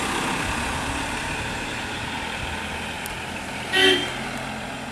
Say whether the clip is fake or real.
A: real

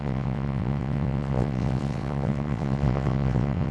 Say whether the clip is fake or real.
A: fake